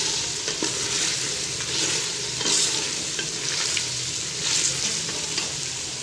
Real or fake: real